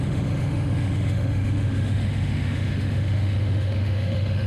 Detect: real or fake fake